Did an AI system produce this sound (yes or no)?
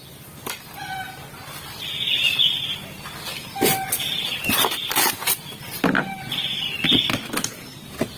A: no